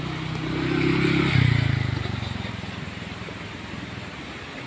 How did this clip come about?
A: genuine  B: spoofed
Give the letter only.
A